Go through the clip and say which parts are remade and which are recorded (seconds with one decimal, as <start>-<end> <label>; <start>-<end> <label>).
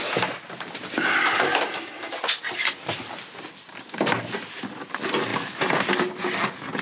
0.0-1.5 recorded; 1.5-4.1 remade; 4.1-6.8 recorded